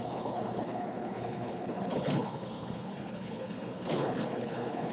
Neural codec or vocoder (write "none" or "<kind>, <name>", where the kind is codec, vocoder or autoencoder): codec, HILCodec